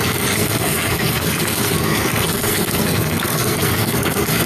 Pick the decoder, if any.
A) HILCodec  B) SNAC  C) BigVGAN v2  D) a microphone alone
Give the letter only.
B